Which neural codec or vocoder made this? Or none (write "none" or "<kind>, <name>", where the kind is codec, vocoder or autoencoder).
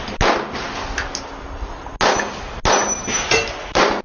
none